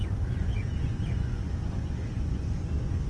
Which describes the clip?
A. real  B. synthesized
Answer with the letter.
B